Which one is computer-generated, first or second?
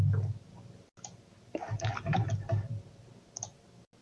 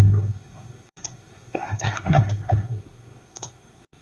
second